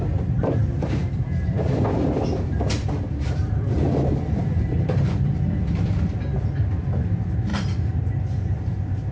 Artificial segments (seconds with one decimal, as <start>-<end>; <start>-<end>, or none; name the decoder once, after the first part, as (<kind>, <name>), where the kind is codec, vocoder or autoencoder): 1.0-6.0 (vocoder, BigVGAN v2)